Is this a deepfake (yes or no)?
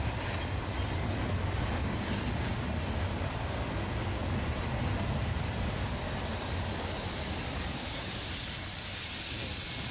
no